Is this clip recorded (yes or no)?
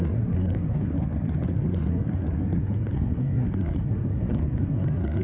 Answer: no